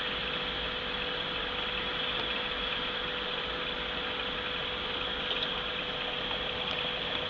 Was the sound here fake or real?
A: real